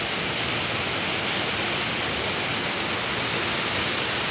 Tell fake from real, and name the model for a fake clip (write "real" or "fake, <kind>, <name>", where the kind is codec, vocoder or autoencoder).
real